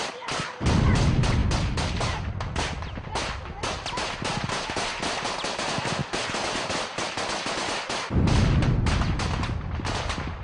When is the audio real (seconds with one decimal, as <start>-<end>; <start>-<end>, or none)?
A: 0.0-10.4